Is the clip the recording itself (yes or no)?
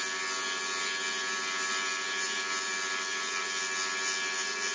yes